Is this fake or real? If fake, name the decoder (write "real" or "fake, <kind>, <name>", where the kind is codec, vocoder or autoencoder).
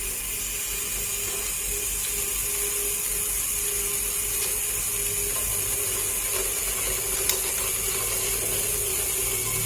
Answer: real